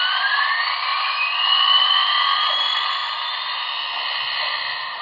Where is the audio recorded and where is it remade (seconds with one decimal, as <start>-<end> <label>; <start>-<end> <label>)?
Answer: 0.0-0.9 recorded; 0.9-1.8 remade; 1.8-3.0 recorded; 3.0-3.7 remade; 3.7-5.0 recorded

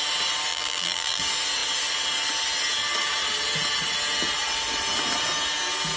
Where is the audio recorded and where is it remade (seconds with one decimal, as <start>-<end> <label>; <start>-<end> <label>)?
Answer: 0.0-0.5 recorded; 0.5-1.2 remade; 1.2-6.0 recorded

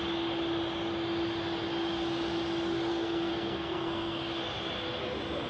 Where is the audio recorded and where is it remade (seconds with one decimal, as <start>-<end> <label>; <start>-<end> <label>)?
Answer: 0.0-2.9 recorded; 2.9-4.2 remade; 4.2-5.5 recorded

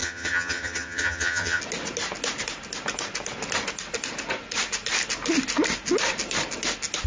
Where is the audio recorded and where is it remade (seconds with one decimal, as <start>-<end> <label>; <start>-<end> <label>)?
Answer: 0.0-1.6 remade; 1.6-7.1 recorded

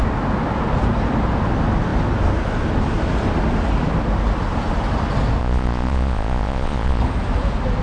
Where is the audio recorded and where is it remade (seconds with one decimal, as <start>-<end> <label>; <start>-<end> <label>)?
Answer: 0.0-5.4 recorded; 5.4-7.0 remade; 7.0-7.8 recorded

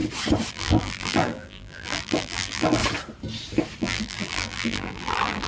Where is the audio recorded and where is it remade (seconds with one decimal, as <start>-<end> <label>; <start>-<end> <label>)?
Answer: 0.0-0.5 recorded; 0.5-2.8 remade; 2.8-3.8 recorded; 3.8-5.5 remade

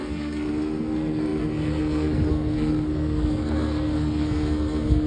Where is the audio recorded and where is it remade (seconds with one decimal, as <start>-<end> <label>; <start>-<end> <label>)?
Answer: 0.0-5.1 remade